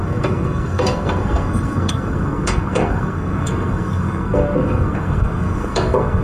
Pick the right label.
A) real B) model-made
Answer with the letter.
B